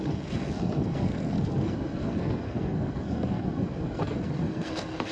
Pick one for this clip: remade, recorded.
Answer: remade